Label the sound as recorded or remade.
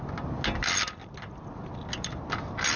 recorded